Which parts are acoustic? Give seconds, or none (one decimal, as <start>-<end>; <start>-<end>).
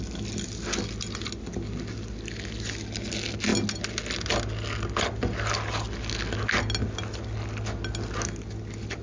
0.0-9.0